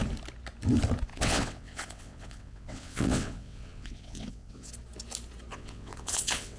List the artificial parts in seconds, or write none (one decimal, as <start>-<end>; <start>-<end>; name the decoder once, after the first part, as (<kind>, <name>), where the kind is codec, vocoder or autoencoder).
1.1-4.7 (vocoder, WaveNeXt); 5.5-6.6